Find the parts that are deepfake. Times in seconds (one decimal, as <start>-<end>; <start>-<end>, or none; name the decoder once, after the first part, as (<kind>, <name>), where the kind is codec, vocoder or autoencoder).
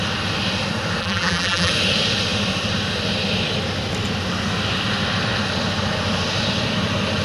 1.0-1.7 (vocoder, BigVGAN v2)